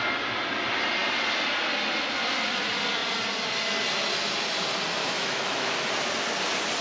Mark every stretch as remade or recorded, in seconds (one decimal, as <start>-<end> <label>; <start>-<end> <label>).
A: 0.0-5.0 recorded; 5.0-5.7 remade; 5.7-6.8 recorded